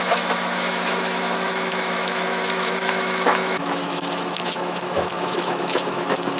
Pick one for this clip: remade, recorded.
remade